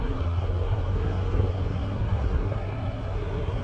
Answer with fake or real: fake